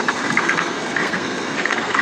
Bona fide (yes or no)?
no